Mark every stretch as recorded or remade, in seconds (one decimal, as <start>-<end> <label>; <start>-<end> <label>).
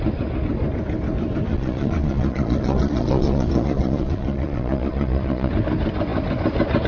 0.0-1.5 recorded; 1.5-5.5 remade; 5.5-6.9 recorded